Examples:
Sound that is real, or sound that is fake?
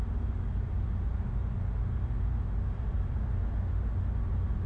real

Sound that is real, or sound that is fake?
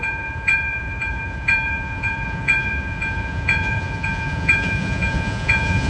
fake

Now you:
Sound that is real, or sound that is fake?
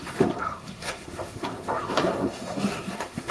fake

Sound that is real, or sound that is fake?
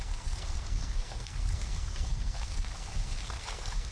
fake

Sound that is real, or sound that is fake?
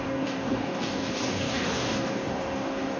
fake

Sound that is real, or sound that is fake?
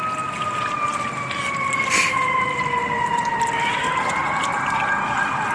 real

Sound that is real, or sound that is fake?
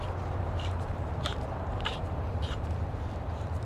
fake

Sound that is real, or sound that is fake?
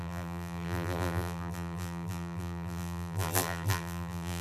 fake